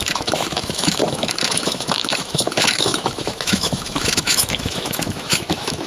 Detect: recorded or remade remade